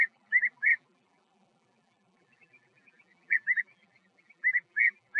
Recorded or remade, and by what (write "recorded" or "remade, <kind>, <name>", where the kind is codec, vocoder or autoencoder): remade, vocoder, BigVGAN v2